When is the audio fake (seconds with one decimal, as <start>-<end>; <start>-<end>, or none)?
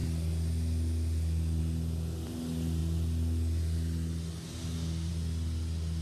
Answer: none